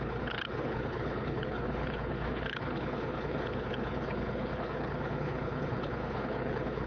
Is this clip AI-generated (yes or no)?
yes